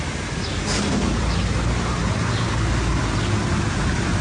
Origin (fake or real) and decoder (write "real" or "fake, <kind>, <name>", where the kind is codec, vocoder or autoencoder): real